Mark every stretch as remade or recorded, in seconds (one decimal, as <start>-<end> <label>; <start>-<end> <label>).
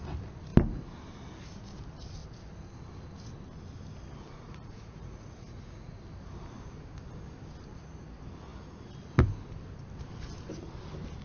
0.0-4.3 recorded; 4.3-6.0 remade; 6.0-11.2 recorded